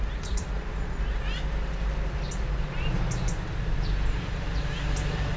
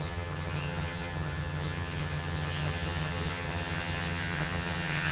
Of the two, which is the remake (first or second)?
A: second